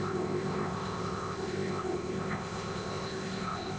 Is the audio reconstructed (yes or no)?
yes